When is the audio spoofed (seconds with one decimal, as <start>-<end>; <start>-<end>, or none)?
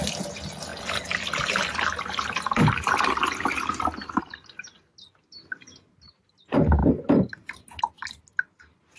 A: 0.7-4.2; 6.8-7.8